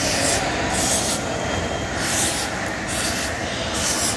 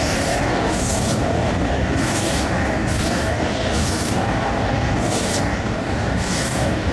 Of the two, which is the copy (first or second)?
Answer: second